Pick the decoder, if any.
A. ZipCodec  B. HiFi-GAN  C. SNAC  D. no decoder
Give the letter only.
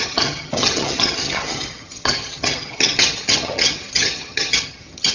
B